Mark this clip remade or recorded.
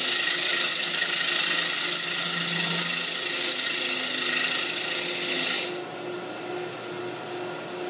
recorded